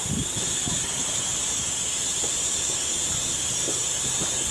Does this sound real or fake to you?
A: real